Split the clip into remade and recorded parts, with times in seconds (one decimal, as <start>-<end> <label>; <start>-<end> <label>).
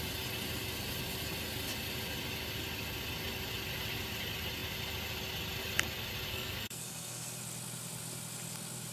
0.0-6.3 recorded; 6.3-7.4 remade; 7.4-8.9 recorded